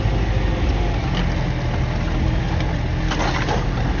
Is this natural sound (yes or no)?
yes